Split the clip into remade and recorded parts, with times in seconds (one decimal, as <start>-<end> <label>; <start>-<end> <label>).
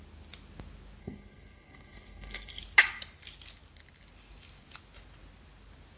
0.0-1.0 recorded; 1.0-2.6 remade; 2.6-6.0 recorded